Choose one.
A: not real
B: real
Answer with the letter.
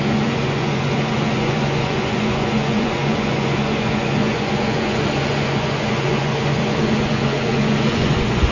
A